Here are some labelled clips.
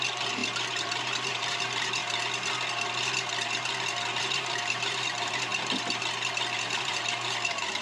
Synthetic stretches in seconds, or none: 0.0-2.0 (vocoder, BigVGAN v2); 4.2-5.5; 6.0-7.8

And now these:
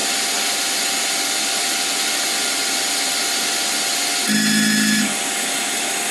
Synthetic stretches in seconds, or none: none

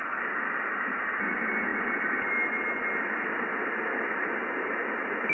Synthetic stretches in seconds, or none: none

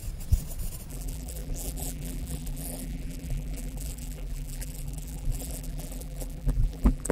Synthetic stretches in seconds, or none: 0.9-7.1 (vocoder, BigVGAN v2)

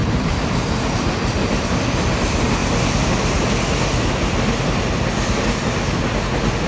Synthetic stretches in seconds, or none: 0.0-0.7 (vocoder, BigVGAN v2)

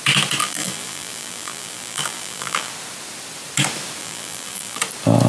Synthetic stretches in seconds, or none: 0.4-2.7 (vocoder, BigVGAN v2); 4.0-4.8

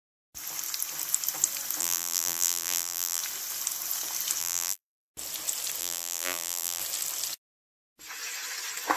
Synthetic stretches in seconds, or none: 1.8-3.2 (vocoder, BigVGAN v2); 4.4-5.1; 5.8-6.8